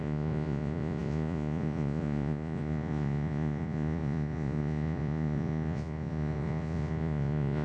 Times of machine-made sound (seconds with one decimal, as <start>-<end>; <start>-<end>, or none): 0.0-7.6